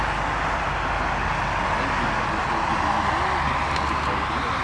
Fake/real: real